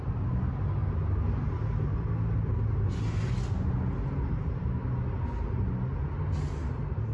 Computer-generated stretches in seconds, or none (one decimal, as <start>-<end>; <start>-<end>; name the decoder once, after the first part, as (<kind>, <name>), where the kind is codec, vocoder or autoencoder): none